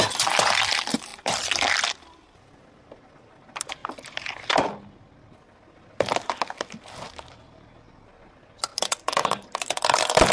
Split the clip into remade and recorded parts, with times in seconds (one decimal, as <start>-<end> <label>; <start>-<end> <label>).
0.0-1.1 recorded; 1.1-2.8 remade; 2.8-3.8 recorded; 3.8-4.6 remade; 4.6-8.7 recorded; 8.7-9.6 remade; 9.6-10.3 recorded